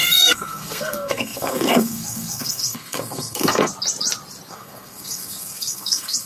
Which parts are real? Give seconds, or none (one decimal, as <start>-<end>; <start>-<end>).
3.7-4.5